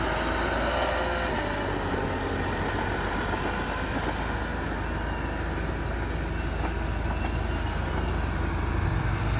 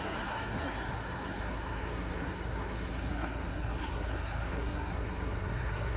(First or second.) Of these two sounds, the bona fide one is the first